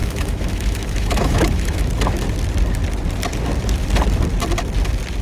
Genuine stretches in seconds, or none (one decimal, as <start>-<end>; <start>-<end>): 1.9-5.2